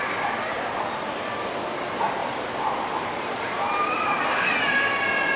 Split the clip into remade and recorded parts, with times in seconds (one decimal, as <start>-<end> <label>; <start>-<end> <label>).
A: 0.0-2.2 recorded; 2.2-4.2 remade; 4.2-5.4 recorded